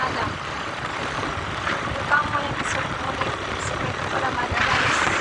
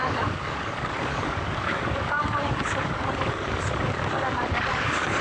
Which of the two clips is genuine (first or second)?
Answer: first